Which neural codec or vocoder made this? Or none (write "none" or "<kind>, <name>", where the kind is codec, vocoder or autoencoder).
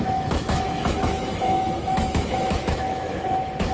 autoencoder, DAC-VAE